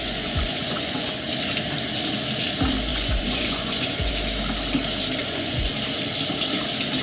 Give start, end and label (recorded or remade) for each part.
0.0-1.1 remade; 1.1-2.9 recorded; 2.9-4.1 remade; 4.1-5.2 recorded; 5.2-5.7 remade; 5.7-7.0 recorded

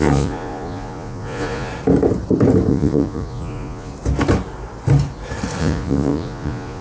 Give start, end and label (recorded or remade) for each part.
0.0-1.7 remade; 1.7-2.7 recorded; 2.7-3.9 remade; 3.9-5.6 recorded; 5.6-6.8 remade